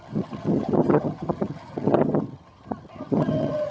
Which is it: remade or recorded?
remade